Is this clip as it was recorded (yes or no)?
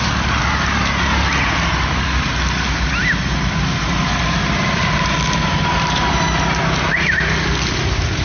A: yes